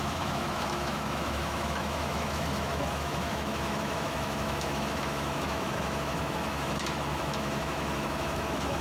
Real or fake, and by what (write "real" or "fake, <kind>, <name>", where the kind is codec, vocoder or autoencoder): fake, autoencoder, DAC-VAE